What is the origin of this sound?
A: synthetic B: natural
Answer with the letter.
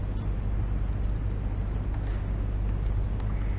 B